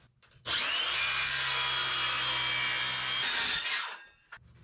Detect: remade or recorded recorded